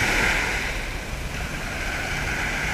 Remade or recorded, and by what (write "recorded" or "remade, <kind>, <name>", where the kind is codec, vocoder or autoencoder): recorded